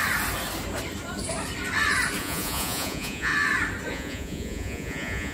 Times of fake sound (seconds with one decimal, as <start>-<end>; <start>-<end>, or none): 2.2-3.3; 3.9-5.3